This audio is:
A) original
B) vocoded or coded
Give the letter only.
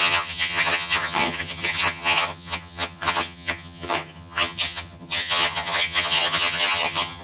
B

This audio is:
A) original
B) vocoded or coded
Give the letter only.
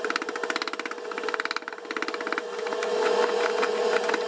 A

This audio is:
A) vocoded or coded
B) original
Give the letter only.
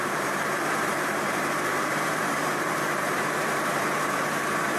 A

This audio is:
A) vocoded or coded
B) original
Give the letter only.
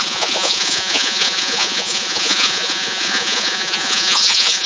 A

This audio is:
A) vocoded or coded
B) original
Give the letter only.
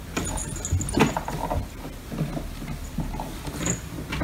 B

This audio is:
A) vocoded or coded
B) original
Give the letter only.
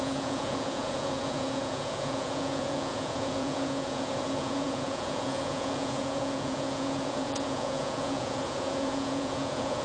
A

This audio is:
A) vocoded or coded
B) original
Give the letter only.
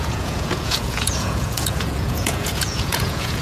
A